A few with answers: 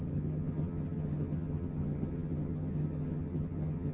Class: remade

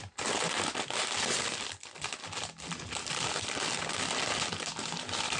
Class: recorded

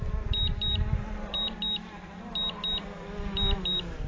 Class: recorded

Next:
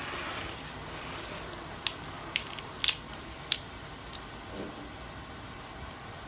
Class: recorded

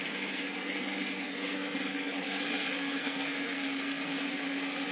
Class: remade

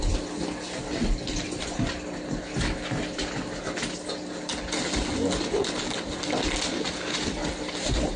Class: recorded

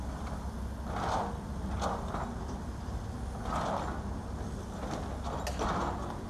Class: recorded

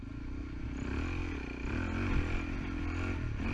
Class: recorded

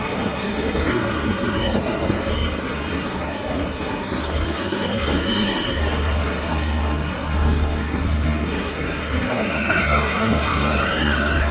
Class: remade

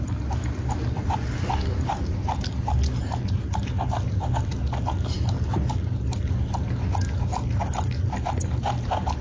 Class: recorded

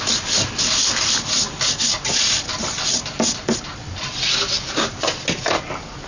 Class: recorded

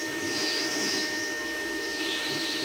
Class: remade